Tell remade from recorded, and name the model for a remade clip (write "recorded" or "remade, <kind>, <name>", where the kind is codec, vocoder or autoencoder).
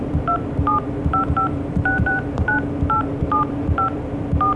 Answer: remade, vocoder, BigVGAN v2